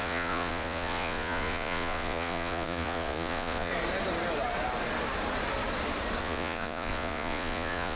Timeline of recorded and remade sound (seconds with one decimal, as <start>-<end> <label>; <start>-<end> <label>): 0.0-3.7 remade; 3.7-6.2 recorded; 6.2-8.0 remade